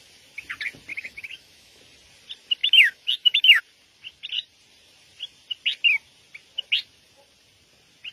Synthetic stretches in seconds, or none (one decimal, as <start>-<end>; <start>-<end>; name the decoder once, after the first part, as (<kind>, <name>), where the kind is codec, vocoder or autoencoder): 0.9-1.8 (autoencoder, DAC-VAE); 2.6-3.6